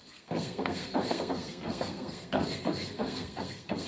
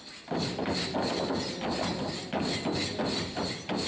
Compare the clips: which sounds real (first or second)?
second